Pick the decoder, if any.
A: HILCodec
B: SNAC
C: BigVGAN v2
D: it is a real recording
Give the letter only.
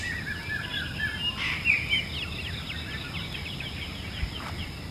D